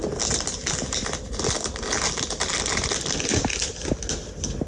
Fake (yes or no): no